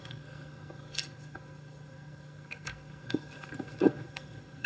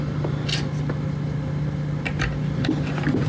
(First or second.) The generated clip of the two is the first